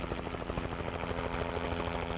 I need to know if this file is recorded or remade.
recorded